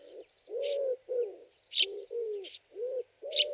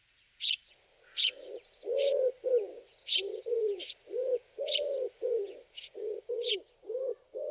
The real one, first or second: first